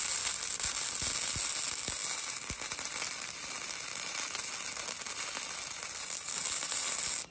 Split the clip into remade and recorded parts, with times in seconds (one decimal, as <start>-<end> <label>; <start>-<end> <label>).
0.0-7.3 recorded